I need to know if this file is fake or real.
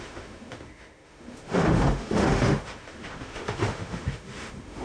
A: fake